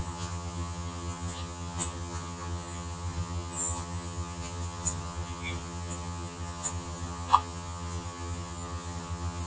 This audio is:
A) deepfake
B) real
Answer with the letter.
A